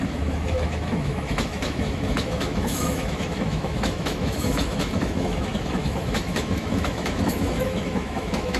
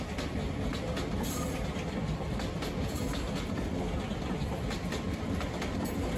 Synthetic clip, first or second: first